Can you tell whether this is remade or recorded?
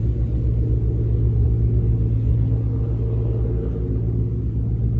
recorded